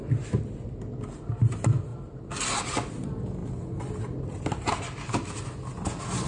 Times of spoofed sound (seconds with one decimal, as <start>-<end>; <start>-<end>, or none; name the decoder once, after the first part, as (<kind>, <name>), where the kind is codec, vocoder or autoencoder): none